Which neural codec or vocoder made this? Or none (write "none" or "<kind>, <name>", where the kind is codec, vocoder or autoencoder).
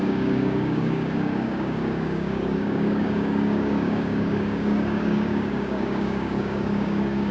codec, DAC